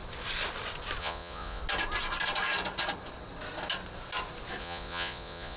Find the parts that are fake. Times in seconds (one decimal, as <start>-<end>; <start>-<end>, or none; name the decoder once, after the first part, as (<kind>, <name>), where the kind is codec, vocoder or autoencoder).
1.0-1.6 (vocoder, Vocos); 4.6-5.6